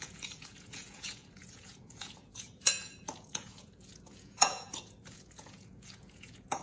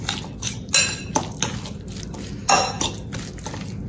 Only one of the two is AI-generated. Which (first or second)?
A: first